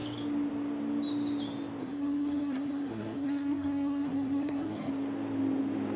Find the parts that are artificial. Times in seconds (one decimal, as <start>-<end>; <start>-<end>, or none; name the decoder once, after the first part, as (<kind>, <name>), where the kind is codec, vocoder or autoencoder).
1.8-4.9 (codec, SNAC)